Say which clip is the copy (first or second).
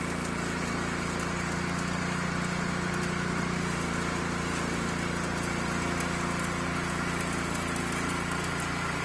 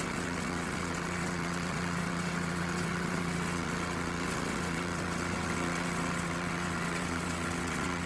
second